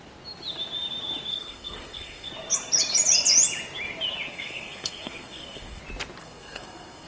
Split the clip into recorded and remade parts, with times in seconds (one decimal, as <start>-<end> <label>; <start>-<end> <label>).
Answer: 0.0-1.3 recorded; 1.3-2.3 remade; 2.3-4.3 recorded; 4.3-5.8 remade; 5.8-6.2 recorded; 6.2-7.1 remade